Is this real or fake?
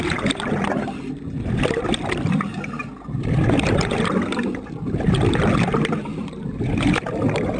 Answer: real